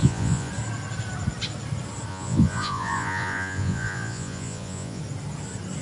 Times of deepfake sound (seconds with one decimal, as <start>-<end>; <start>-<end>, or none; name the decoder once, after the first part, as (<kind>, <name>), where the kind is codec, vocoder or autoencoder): 0.0-0.5 (vocoder, Vocos); 2.1-5.0